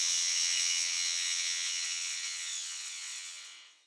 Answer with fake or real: fake